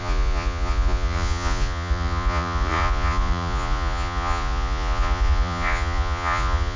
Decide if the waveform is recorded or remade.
remade